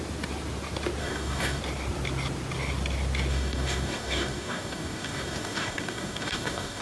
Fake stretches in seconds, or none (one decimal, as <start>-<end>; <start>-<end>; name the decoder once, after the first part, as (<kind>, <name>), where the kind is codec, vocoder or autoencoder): 1.0-1.6 (codec, DAC); 3.3-6.8

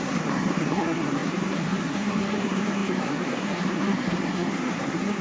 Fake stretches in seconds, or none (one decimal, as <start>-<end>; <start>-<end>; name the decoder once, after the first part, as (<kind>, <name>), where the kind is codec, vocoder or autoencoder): 0.0-5.2 (codec, SNAC)

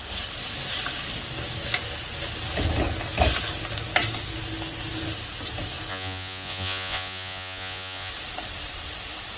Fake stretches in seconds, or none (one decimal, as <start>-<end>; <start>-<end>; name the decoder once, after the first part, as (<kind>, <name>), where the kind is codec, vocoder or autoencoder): 5.9-8.1 (vocoder, Vocos)

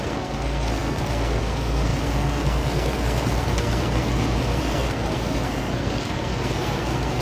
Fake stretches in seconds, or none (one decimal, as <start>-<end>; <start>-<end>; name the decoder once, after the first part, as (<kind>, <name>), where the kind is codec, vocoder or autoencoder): 0.0-7.2 (codec, SNAC)

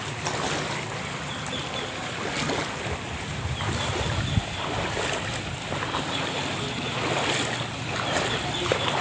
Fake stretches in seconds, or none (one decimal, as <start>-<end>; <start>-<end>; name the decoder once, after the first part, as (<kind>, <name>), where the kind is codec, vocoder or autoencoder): none

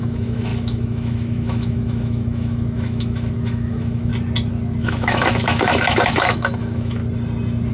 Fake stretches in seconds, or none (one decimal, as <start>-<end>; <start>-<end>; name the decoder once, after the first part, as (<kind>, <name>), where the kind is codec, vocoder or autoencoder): 0.0-4.1 (autoencoder, DAC-VAE); 4.8-7.0

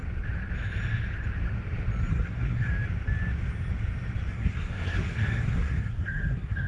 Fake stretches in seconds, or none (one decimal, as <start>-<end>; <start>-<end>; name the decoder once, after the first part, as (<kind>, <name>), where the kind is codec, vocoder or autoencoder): 2.1-2.7 (codec, SNAC); 4.3-6.7

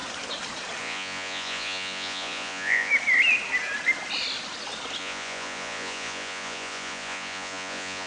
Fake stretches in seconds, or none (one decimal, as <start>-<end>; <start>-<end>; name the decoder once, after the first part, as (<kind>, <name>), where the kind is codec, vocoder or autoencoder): 0.8-2.9 (vocoder, Vocos); 5.0-8.1